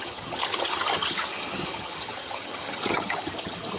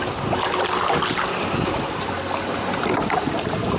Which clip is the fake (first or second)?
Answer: first